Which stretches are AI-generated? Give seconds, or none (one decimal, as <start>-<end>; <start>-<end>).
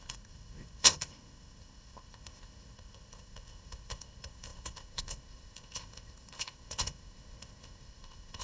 0.0-8.4